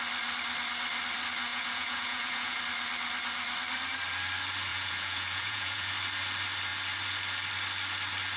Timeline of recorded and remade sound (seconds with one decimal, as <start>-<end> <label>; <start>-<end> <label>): 0.0-1.5 recorded; 1.5-2.6 remade; 2.6-4.7 recorded; 4.7-5.9 remade; 5.9-8.4 recorded